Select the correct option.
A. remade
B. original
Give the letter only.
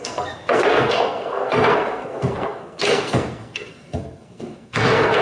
A